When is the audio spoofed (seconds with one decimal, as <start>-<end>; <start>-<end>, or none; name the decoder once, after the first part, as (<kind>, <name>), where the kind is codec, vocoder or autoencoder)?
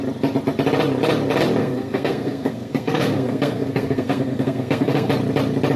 1.6-5.1 (codec, SNAC)